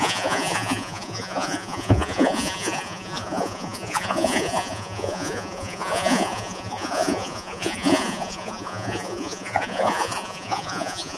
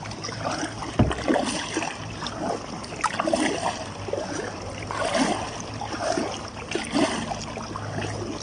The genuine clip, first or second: second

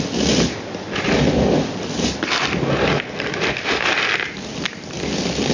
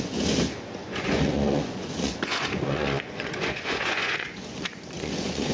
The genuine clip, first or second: first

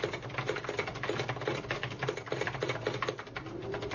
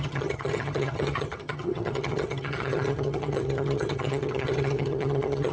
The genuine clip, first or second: first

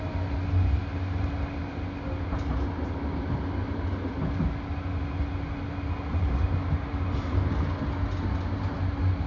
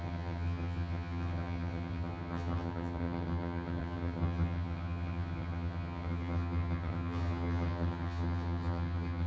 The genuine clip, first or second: first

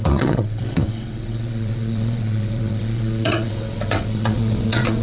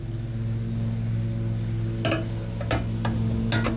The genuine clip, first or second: second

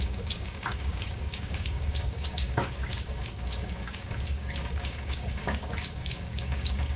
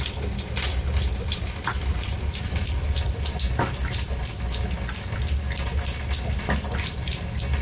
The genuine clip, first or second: second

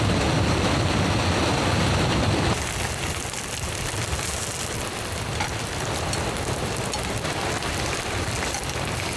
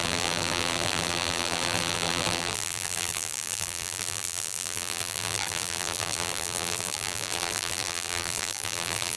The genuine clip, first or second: first